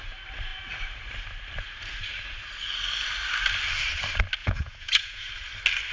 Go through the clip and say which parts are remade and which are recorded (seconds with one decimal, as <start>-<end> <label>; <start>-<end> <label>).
0.0-4.4 recorded; 4.4-5.3 remade; 5.3-5.9 recorded